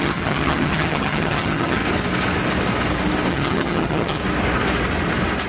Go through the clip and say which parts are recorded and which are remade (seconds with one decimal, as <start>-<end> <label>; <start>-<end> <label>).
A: 0.0-1.8 remade; 1.8-3.3 recorded; 3.3-4.2 remade; 4.2-5.5 recorded